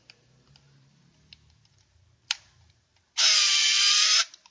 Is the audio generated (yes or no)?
yes